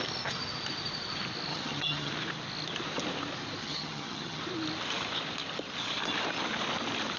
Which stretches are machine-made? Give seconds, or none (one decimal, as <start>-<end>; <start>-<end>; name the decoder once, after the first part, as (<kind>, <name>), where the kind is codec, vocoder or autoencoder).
1.5-2.1 (vocoder, HiFi-GAN); 3.6-4.4